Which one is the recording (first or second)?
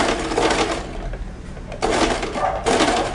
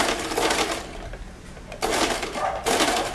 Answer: first